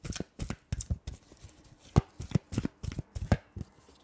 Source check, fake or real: real